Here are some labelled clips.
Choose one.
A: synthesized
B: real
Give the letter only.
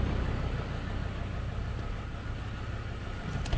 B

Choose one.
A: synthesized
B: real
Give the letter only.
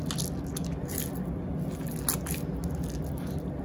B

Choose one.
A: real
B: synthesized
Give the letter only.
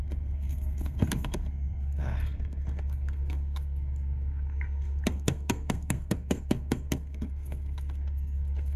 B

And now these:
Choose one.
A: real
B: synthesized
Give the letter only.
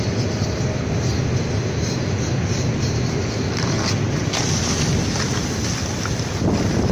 A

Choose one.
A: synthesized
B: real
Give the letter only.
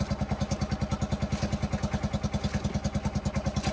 B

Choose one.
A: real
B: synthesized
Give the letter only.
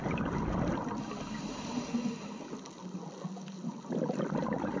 A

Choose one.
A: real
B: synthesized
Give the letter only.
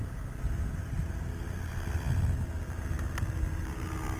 A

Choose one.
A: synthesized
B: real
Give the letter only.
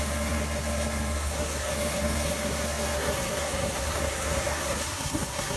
A